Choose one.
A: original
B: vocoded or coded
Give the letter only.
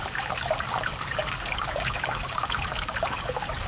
B